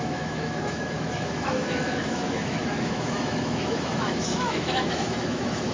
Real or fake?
fake